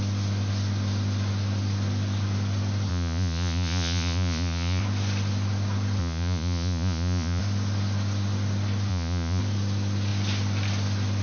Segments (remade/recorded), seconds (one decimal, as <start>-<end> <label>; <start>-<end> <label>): 0.0-2.9 recorded; 2.9-4.8 remade; 4.8-6.0 recorded; 6.0-7.4 remade; 7.4-8.9 recorded; 8.9-9.4 remade; 9.4-11.2 recorded